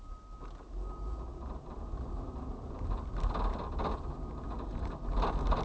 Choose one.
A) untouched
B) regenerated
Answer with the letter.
A